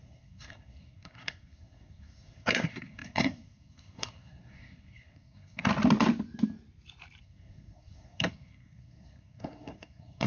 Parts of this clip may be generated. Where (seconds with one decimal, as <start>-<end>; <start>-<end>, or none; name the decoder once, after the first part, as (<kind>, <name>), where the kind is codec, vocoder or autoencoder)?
0.0-5.7 (codec, SNAC); 7.2-10.3